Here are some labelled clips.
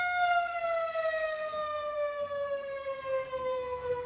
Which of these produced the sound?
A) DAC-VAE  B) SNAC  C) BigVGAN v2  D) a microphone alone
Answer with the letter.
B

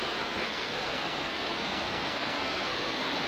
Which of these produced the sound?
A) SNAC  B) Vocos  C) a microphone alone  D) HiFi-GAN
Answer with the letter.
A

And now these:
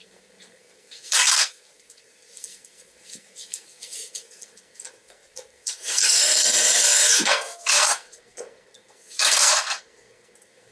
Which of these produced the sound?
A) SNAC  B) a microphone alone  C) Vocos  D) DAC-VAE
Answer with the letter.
A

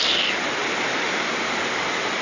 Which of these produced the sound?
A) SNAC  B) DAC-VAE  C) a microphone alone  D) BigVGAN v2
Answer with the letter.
C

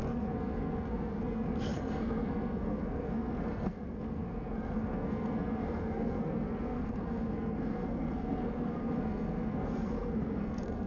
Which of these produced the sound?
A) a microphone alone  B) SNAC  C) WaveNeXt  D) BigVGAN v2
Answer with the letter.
B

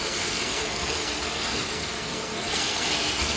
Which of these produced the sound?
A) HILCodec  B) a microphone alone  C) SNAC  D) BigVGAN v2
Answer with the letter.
C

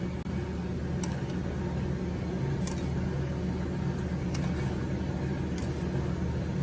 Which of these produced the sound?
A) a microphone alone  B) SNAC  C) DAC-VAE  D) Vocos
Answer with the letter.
A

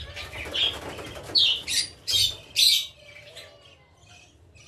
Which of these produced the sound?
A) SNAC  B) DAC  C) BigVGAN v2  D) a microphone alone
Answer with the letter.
D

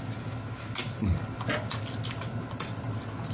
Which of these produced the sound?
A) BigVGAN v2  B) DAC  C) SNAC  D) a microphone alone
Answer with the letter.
D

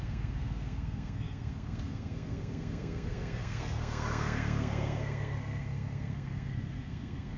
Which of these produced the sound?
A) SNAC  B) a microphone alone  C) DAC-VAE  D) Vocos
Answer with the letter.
A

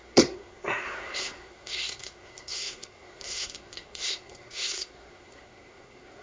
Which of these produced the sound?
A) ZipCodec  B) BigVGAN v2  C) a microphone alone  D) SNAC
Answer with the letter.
D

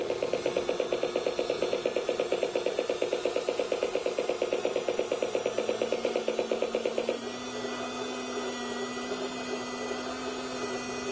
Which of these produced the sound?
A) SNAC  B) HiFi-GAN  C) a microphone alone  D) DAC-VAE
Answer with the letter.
C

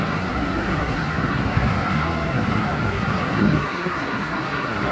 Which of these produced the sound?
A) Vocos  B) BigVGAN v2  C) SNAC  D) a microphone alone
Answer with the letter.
C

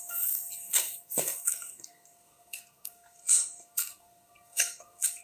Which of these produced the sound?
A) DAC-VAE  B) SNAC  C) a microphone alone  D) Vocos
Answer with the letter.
B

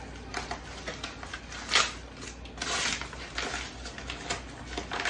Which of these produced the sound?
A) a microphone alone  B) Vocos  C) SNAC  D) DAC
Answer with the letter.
A